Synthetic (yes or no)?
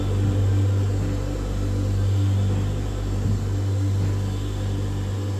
no